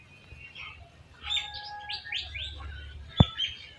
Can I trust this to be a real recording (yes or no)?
yes